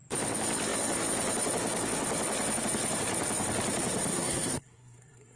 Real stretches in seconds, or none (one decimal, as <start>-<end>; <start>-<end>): 0.0-4.1

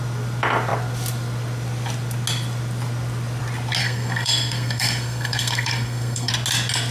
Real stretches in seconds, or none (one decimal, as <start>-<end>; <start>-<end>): 0.0-3.8; 6.3-6.9

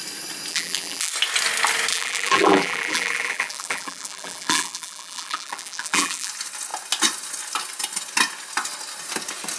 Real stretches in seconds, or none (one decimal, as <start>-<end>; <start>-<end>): 0.0-0.5; 1.1-1.9; 6.3-9.6

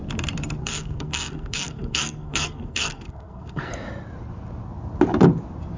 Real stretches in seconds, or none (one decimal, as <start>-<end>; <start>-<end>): 0.0-0.6; 3.7-5.8

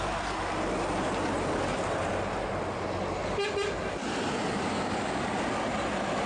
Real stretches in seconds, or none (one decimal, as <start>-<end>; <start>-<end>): 0.0-6.3

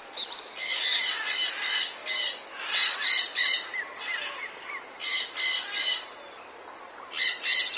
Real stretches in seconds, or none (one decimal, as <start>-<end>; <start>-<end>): 0.0-0.9; 1.5-2.0; 4.4-7.8

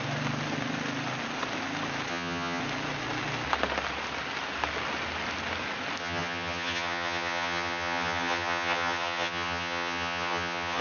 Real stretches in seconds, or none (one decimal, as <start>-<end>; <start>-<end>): 0.0-2.1; 2.6-6.0